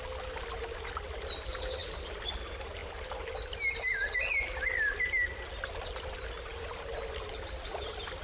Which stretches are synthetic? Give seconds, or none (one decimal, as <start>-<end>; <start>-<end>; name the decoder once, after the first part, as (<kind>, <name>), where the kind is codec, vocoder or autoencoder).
none